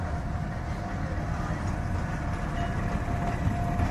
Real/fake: real